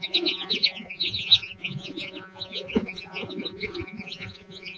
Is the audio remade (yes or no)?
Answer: yes